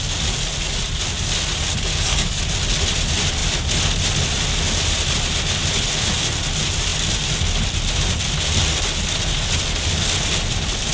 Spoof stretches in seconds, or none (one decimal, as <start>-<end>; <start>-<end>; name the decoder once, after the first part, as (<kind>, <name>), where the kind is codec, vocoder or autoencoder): 1.9-2.4 (codec, DAC)